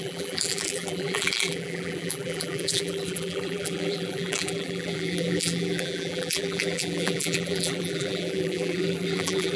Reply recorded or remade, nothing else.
remade